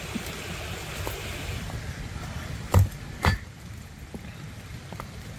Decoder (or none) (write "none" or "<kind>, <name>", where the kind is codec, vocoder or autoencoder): vocoder, BigVGAN v2